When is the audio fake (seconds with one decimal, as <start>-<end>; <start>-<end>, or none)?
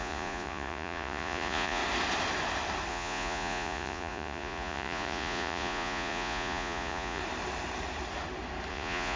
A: 0.0-1.8; 2.9-7.2; 8.7-9.2